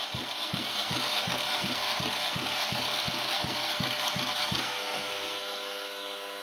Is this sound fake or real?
fake